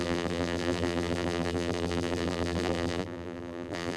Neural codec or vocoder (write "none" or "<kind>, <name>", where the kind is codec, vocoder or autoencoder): vocoder, BigVGAN v2